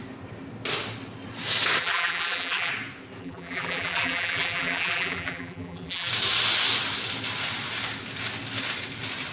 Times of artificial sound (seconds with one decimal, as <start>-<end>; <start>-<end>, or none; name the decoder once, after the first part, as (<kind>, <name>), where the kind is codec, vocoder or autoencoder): 1.8-2.7 (vocoder, BigVGAN v2); 3.2-6.1